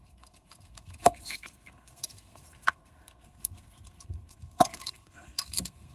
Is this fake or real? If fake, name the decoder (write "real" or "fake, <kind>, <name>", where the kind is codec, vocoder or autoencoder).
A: fake, codec, SNAC